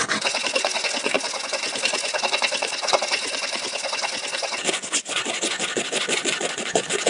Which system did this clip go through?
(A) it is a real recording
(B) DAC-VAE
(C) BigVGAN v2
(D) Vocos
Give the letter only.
D